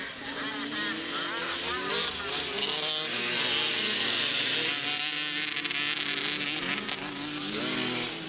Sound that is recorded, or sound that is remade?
recorded